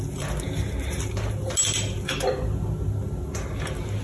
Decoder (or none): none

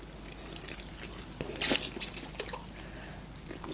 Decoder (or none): none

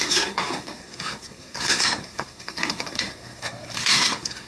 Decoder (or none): codec, SNAC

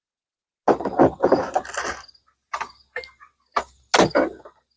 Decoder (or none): none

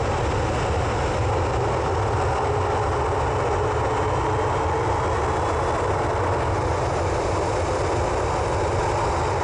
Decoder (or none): none